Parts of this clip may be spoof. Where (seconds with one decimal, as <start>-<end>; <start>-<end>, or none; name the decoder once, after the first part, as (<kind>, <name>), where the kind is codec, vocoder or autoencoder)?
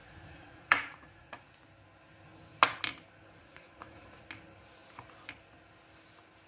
0.0-1.5 (vocoder, Vocos); 3.4-4.2